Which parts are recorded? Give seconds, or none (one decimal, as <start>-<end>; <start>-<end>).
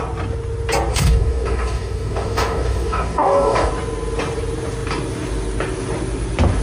0.0-0.9; 3.7-6.6